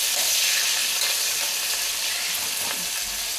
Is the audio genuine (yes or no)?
yes